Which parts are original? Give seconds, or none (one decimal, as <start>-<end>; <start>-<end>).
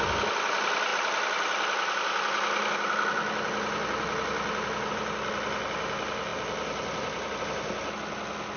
0.0-8.6